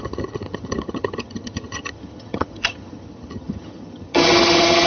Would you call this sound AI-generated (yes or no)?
yes